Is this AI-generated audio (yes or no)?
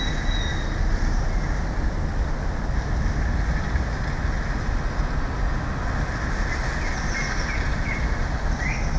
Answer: no